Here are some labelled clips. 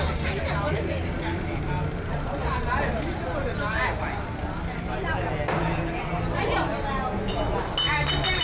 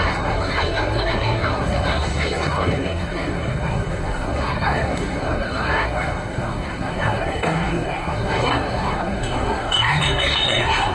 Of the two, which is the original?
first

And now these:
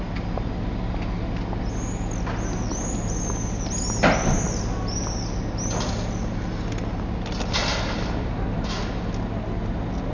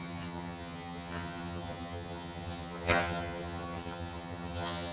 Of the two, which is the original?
first